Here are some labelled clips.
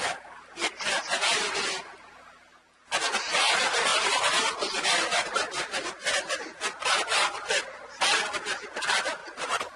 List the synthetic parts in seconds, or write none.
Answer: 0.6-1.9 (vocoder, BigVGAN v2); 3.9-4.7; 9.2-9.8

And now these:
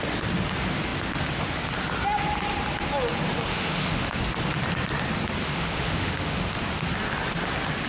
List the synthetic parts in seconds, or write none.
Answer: 3.5-4.2 (autoencoder, DAC-VAE); 5.4-6.5